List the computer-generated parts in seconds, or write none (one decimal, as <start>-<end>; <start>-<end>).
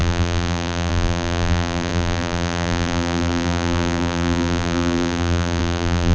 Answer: 0.0-6.1